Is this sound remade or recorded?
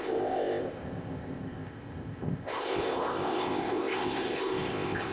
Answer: remade